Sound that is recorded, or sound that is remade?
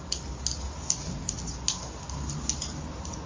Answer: recorded